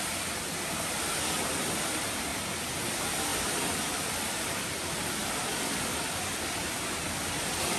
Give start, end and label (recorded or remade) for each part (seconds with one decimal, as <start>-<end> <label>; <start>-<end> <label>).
0.0-3.3 recorded; 3.3-4.2 remade; 4.2-7.8 recorded